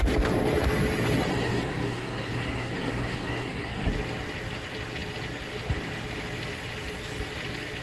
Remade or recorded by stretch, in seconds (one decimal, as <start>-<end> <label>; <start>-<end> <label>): 0.0-1.3 recorded; 1.3-3.9 remade; 3.9-7.8 recorded